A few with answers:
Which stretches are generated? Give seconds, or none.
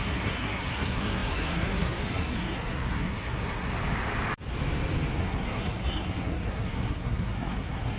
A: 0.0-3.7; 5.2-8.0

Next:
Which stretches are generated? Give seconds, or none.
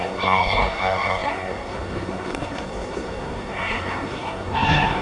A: 0.0-5.0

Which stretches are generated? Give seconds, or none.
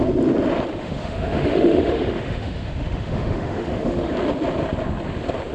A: 0.8-4.1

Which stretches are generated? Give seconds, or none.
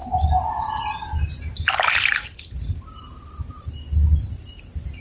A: none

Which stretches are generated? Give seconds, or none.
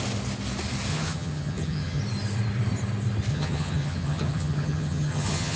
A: 0.9-2.0; 3.3-5.6